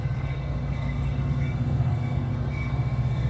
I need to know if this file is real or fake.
fake